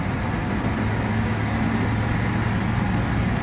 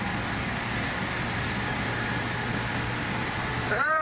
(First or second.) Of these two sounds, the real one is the first